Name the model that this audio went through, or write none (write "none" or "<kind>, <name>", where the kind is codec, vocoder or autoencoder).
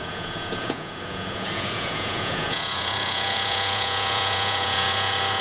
vocoder, Vocos